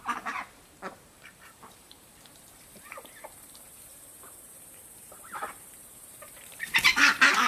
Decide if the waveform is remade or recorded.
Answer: remade